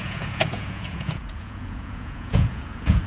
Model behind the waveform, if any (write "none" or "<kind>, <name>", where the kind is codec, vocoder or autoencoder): vocoder, Vocos